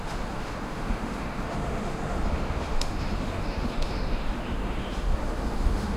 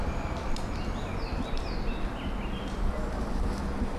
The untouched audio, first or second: second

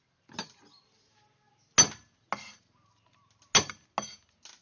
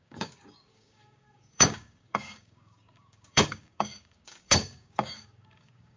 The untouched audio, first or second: first